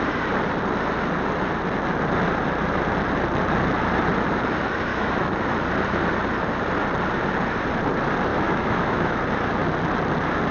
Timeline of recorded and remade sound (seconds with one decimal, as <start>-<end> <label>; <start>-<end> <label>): 0.0-4.9 recorded; 4.9-5.4 remade; 5.4-8.3 recorded; 8.3-9.2 remade; 9.2-10.5 recorded